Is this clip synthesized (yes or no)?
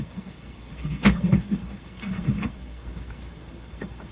yes